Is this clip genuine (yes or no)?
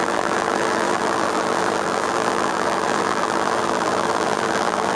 no